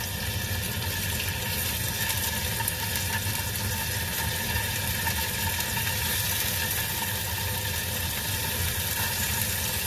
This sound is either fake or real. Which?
real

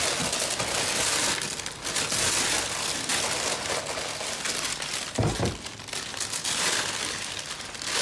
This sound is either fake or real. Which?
real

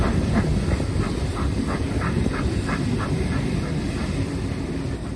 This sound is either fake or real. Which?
real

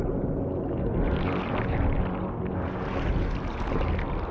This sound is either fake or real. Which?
real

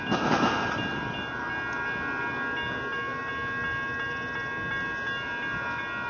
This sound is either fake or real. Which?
real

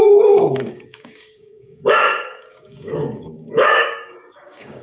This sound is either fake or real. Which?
fake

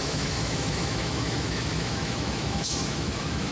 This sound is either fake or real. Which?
fake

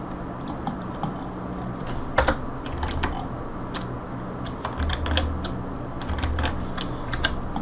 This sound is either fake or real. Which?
real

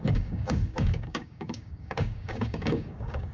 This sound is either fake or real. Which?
fake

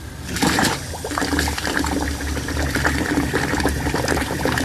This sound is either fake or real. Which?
fake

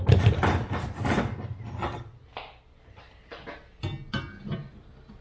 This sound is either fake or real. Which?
real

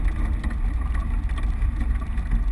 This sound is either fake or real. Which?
real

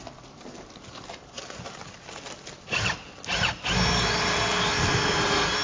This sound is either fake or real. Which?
real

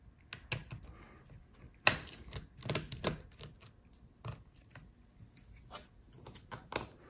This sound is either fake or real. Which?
real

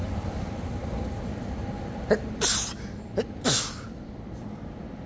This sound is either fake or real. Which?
real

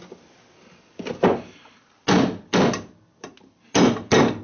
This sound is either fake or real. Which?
real